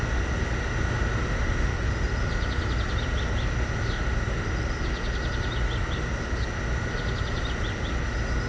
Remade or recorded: recorded